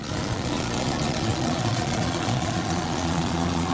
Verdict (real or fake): fake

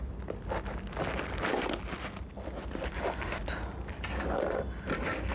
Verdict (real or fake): real